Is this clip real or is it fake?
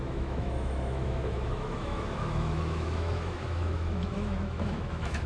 fake